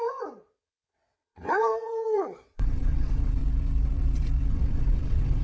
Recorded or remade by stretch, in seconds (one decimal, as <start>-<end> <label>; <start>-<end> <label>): 0.0-3.4 remade; 3.4-4.5 recorded; 4.5-5.4 remade